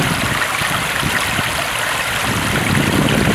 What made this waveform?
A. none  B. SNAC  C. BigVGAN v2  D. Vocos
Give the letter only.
A